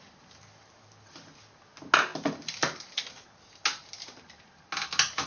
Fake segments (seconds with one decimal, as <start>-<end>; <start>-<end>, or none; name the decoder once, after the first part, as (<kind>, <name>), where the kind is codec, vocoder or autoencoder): none